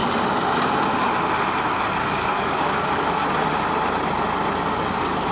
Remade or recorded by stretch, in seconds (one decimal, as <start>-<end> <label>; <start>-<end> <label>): 0.0-1.7 recorded; 1.7-3.2 remade; 3.2-4.8 recorded; 4.8-5.3 remade